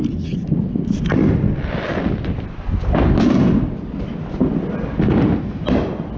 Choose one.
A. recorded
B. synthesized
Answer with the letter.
A